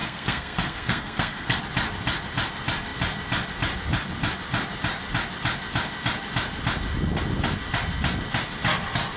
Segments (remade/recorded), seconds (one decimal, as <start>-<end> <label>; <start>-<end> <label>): 0.0-1.6 remade; 1.6-9.2 recorded